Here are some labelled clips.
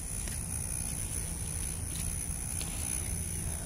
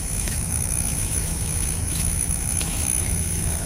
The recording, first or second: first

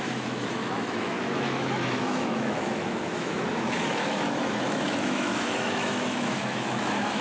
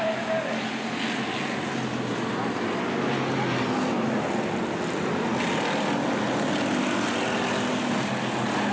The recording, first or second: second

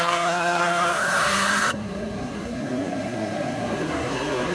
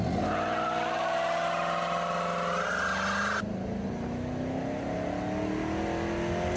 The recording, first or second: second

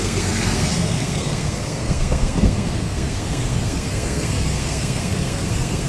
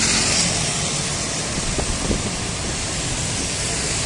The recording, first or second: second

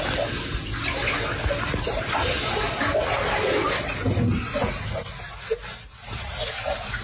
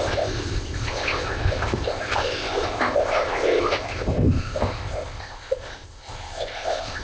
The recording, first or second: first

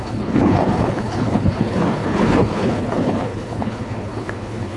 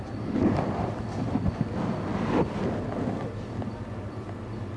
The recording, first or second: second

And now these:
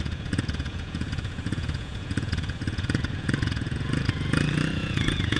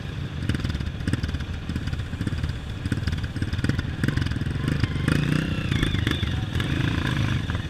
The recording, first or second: second